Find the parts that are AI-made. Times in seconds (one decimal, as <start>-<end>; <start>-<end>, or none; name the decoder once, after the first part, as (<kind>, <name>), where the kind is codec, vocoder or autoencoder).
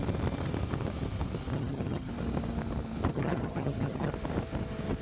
1.5-2.1 (vocoder, HiFi-GAN); 3.1-4.1